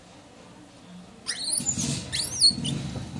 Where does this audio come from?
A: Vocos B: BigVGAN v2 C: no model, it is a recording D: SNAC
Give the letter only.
C